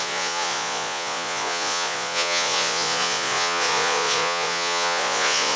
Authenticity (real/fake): fake